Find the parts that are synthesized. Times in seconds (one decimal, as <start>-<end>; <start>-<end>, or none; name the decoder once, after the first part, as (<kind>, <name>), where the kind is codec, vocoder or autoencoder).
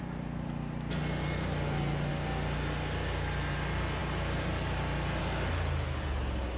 none